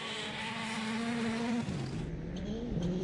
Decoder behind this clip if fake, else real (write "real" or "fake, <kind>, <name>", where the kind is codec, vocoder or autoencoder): real